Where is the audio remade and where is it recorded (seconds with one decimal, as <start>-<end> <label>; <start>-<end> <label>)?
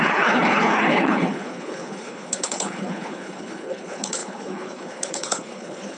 0.0-6.0 remade